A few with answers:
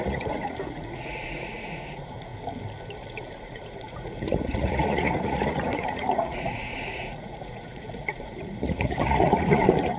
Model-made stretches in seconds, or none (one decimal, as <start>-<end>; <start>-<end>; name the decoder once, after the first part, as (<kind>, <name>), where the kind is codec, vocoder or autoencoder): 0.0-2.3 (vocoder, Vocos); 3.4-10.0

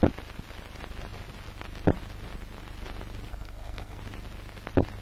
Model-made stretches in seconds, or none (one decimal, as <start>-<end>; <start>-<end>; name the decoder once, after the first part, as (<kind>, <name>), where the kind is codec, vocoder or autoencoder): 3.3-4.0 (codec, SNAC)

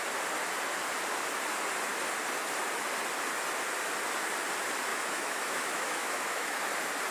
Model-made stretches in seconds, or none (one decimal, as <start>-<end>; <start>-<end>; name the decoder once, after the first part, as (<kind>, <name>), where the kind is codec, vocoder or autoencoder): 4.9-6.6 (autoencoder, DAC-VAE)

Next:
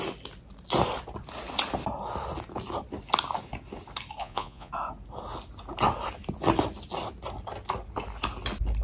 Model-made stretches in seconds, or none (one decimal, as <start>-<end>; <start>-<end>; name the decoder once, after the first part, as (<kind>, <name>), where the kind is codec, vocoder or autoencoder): 4.2-4.7 (vocoder, Vocos)

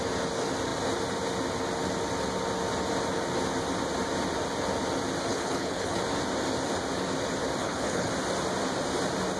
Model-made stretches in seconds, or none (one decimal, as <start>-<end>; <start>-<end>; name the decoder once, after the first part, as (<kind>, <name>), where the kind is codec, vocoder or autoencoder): 5.3-6.0 (codec, HILCodec); 7.6-8.1

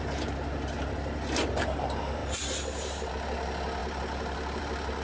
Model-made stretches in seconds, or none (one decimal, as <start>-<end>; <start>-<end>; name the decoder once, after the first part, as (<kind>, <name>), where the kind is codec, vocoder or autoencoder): none

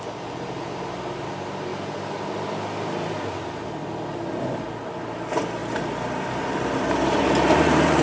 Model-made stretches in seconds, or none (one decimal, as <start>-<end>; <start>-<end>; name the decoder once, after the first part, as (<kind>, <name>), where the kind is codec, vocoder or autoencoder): none

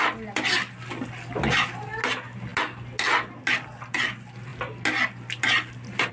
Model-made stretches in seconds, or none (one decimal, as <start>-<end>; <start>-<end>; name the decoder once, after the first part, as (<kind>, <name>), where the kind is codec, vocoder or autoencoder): none